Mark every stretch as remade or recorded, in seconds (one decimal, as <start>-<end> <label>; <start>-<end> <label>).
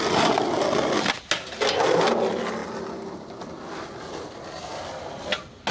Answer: 0.0-5.7 recorded